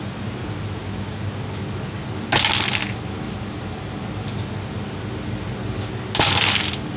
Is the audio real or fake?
real